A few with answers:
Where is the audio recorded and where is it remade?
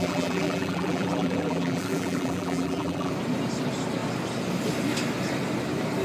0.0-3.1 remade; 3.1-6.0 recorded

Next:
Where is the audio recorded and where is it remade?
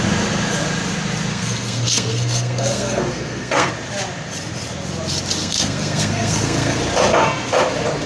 0.0-1.3 recorded; 1.3-3.7 remade; 3.7-5.4 recorded; 5.4-6.8 remade; 6.8-8.1 recorded